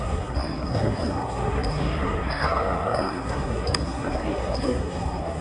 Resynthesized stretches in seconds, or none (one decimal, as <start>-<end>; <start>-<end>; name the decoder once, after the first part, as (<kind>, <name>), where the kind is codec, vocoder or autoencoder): 0.0-5.4 (codec, SNAC)